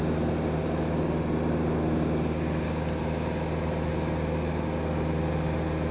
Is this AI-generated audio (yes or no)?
no